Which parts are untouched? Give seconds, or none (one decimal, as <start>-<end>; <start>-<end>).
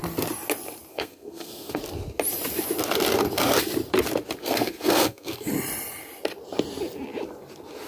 0.0-0.9; 1.8-4.4; 5.5-7.9